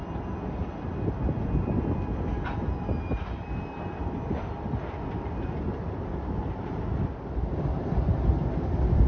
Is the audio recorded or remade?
recorded